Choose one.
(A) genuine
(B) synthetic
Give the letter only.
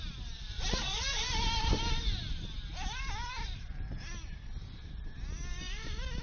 A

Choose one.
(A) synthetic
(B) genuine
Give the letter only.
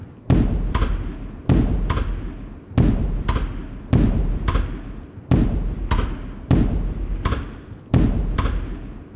B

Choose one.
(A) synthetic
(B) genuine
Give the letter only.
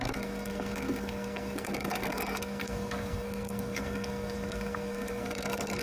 A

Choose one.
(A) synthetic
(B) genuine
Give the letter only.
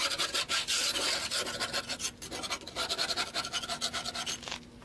B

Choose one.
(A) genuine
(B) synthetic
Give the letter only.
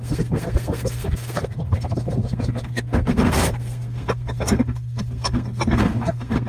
B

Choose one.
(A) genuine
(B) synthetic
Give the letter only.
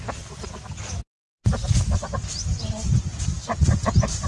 A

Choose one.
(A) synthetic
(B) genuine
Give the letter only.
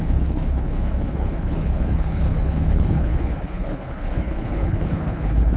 A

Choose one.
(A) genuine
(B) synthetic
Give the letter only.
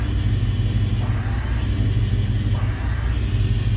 A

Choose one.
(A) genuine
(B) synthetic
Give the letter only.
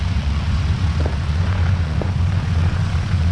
B